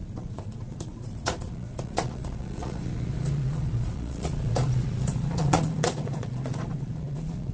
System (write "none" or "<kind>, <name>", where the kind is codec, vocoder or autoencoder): vocoder, Vocos